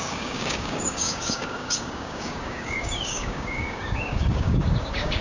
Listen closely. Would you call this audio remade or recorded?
remade